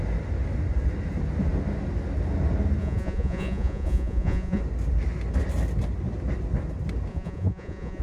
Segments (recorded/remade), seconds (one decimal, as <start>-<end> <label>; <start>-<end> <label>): 0.0-2.8 recorded; 2.8-4.6 remade; 4.6-7.1 recorded; 7.1-8.0 remade